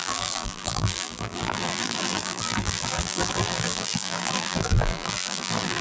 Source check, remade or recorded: remade